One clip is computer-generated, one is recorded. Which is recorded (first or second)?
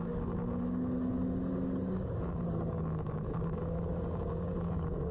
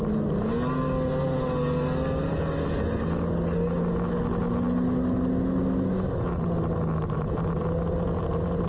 second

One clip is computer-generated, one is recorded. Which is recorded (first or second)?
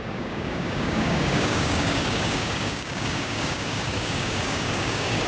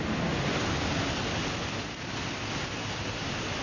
second